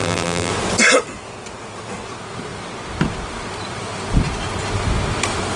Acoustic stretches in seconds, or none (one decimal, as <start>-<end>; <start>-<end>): 0.5-5.6